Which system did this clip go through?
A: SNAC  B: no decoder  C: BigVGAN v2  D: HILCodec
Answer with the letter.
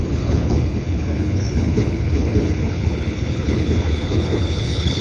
D